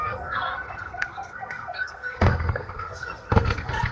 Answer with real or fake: fake